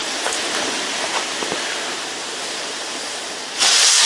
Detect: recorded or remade remade